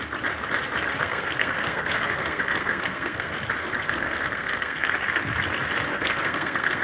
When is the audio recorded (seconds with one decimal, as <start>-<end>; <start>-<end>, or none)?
0.0-1.0; 3.3-3.7; 4.9-5.9